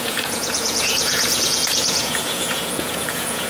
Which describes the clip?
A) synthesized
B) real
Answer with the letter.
A